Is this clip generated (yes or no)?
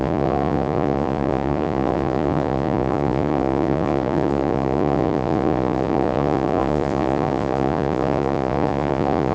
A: yes